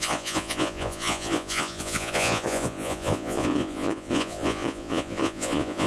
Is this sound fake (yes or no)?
yes